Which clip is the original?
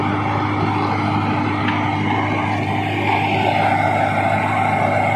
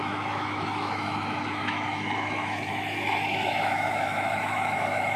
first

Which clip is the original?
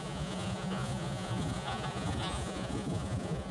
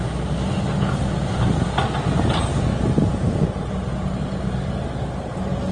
second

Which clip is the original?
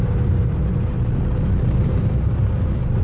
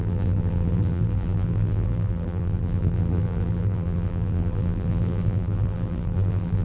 first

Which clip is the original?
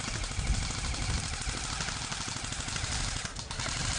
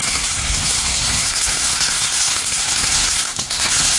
first